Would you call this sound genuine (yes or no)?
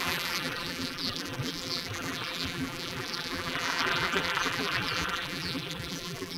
no